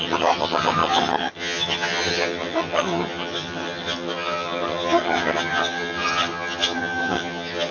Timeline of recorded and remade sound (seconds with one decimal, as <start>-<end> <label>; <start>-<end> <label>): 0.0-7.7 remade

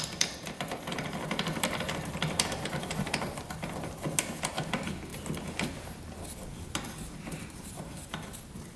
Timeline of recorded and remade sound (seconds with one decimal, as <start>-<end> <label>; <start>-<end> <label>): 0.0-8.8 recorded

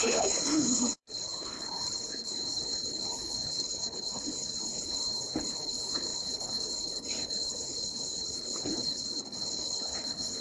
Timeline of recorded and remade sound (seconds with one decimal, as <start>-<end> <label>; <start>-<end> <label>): 0.0-10.4 remade

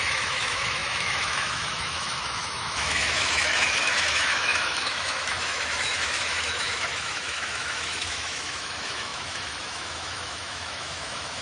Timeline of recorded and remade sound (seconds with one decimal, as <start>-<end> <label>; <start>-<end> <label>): 0.0-11.4 remade